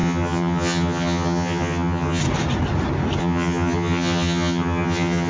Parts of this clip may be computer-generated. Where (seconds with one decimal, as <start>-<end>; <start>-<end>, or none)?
0.0-2.2; 3.2-5.3